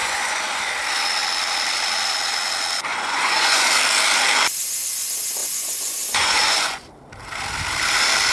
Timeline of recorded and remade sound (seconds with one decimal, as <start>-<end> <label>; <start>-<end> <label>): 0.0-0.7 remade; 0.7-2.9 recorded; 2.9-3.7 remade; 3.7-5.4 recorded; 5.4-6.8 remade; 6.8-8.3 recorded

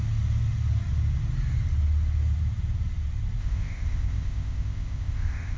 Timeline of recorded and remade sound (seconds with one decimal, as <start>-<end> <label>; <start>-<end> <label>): 0.0-3.4 recorded; 3.4-5.6 remade

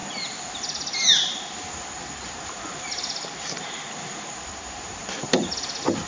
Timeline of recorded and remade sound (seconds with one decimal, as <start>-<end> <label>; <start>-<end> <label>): 0.0-6.1 recorded

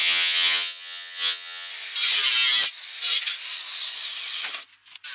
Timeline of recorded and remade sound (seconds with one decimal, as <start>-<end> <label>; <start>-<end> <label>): 0.0-1.7 remade; 1.7-5.1 recorded

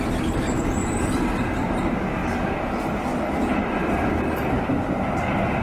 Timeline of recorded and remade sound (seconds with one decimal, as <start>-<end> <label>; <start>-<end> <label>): 0.0-0.8 recorded; 0.8-1.7 remade; 1.7-2.2 recorded; 2.2-4.2 remade; 4.2-5.6 recorded